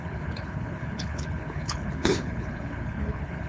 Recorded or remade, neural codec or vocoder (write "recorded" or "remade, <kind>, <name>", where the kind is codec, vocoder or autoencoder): remade, codec, HILCodec